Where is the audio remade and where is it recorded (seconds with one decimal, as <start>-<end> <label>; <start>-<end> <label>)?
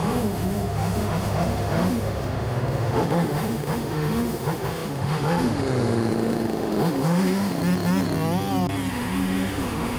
0.0-7.6 remade; 7.6-8.9 recorded; 8.9-10.0 remade